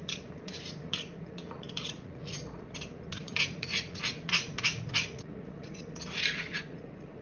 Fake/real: fake